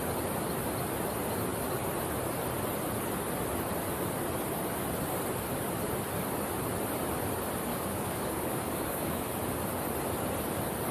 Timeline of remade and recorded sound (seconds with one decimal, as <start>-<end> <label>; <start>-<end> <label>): 0.0-7.7 recorded; 7.7-9.3 remade; 9.3-10.9 recorded